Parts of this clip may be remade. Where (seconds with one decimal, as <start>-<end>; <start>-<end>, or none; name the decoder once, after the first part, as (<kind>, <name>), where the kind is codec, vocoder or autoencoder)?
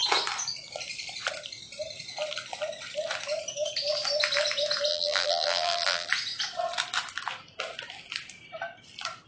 4.9-6.1 (vocoder, BigVGAN v2)